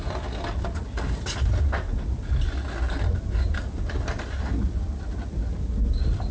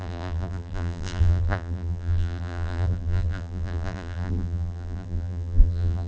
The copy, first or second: second